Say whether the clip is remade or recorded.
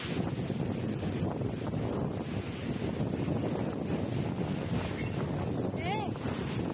recorded